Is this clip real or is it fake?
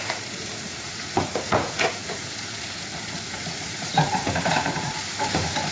fake